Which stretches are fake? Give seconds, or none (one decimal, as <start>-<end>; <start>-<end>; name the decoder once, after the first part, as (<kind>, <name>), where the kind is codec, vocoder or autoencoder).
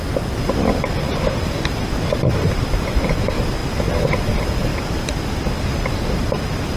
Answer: none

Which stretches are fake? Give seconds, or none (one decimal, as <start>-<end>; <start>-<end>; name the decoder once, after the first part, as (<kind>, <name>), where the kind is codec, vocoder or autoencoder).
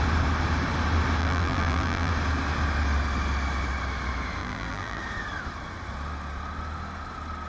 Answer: 1.2-2.1 (vocoder, BigVGAN v2); 4.4-5.0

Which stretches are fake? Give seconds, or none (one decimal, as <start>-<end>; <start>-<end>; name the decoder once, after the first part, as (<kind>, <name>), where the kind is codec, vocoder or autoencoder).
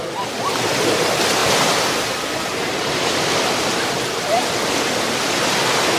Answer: 1.4-4.1 (vocoder, BigVGAN v2)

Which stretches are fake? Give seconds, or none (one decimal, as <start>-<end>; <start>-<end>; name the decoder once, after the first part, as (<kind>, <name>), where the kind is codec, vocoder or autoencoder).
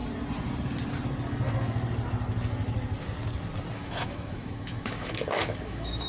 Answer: 3.7-6.1 (autoencoder, DAC-VAE)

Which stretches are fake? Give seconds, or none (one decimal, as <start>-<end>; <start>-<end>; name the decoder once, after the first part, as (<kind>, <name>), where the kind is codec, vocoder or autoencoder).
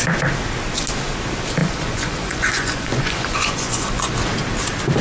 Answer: 1.6-4.1 (vocoder, Vocos)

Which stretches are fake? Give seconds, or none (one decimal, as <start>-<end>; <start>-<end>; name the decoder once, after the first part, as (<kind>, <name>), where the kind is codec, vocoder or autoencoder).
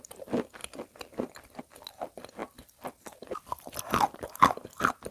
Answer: 0.6-1.6 (vocoder, BigVGAN v2)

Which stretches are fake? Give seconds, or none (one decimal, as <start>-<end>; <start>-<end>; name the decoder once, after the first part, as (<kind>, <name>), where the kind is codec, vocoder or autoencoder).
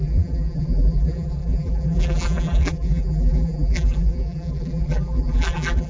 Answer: 0.0-5.9 (vocoder, BigVGAN v2)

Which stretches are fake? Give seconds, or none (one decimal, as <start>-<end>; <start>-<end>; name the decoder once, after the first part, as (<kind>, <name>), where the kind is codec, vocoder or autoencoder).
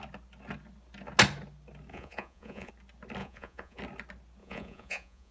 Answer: 1.9-2.7 (vocoder, Vocos); 3.2-3.8; 4.4-5.3